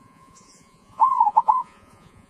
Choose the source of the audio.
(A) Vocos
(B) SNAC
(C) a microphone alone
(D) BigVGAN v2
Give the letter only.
A